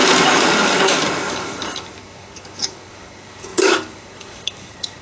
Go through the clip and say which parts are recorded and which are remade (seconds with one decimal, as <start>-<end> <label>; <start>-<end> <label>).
0.0-1.3 recorded; 1.3-5.0 remade